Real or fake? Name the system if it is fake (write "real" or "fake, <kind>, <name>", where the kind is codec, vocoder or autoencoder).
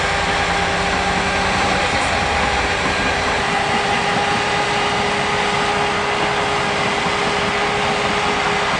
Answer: real